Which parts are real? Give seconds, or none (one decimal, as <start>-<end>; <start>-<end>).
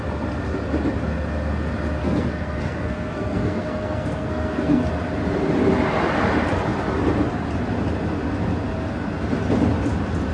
0.0-2.0; 4.9-10.3